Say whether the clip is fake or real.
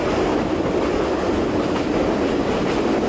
real